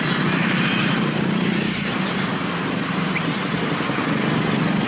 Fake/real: fake